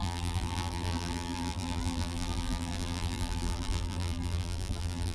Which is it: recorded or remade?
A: remade